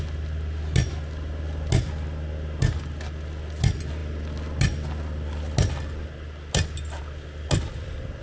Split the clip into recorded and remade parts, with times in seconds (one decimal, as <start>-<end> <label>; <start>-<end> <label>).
0.0-8.2 recorded